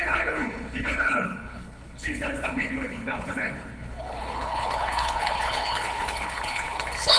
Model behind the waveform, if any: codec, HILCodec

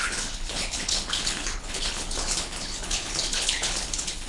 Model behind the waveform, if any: codec, HILCodec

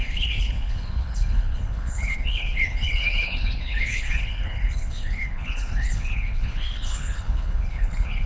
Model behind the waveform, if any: codec, HILCodec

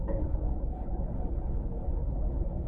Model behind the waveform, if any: codec, HILCodec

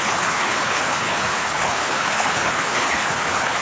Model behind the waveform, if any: codec, HILCodec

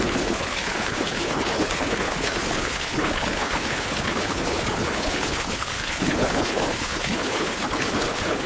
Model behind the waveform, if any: codec, HILCodec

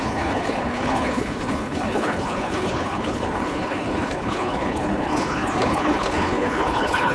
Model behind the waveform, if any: codec, HILCodec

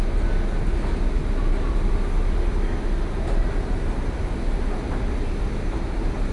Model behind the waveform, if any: none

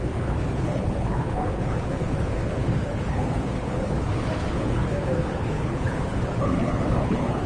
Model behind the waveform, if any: codec, HILCodec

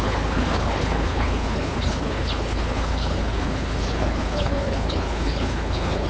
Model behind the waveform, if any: codec, HILCodec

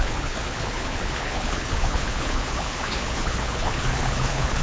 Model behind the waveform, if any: codec, HILCodec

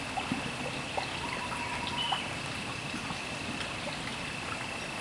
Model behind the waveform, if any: none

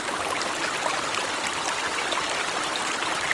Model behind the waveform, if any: none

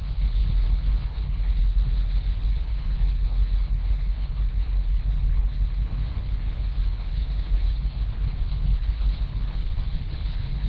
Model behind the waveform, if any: codec, HILCodec